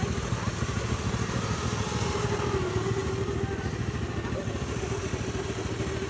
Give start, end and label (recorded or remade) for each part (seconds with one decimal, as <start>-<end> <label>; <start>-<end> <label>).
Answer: 0.0-6.1 recorded